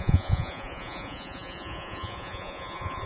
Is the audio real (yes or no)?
no